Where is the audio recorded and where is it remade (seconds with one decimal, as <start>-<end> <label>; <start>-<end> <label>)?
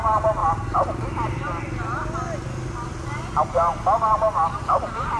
0.0-5.2 recorded